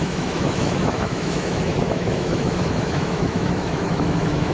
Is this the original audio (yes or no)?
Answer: no